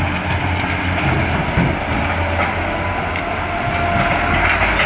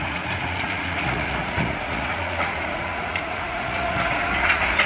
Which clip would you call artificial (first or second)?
second